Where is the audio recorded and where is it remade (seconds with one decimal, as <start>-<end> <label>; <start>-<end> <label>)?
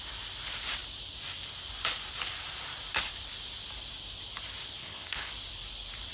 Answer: 0.0-4.8 recorded; 4.8-5.3 remade; 5.3-6.1 recorded